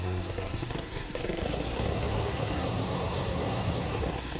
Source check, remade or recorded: remade